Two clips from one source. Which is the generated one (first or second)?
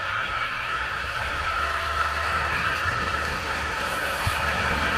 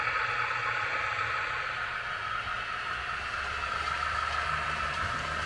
first